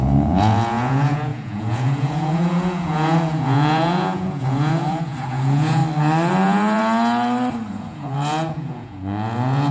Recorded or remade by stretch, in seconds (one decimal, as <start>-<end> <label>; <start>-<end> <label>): 0.0-5.8 remade; 5.8-6.3 recorded; 6.3-6.8 remade; 6.8-7.7 recorded; 7.7-9.7 remade